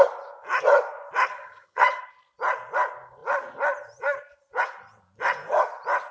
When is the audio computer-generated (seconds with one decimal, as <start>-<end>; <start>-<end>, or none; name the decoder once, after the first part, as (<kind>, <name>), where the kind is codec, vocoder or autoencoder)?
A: 1.3-2.0 (vocoder, HiFi-GAN)